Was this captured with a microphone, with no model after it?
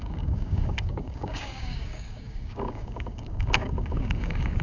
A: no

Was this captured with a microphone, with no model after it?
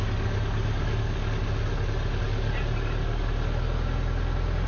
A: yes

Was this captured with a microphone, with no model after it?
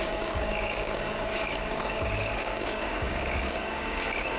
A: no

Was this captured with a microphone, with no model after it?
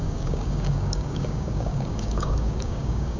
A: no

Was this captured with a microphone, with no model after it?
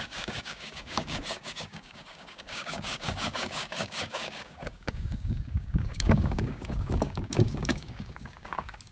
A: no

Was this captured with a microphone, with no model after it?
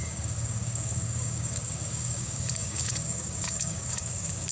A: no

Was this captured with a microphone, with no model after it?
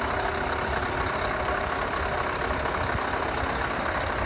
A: yes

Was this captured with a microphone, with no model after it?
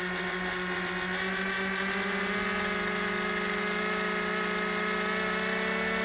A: yes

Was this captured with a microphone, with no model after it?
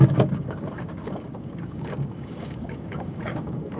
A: no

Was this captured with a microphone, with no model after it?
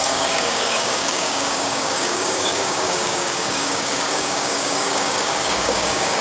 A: no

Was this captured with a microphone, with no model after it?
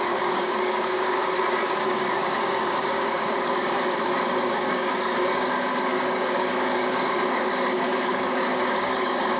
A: no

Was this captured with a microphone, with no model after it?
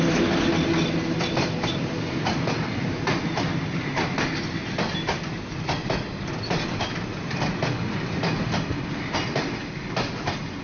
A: yes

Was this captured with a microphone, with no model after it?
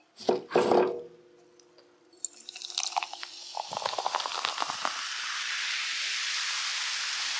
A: yes